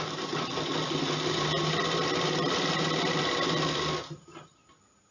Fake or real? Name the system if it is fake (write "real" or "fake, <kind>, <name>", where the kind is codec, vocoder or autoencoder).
real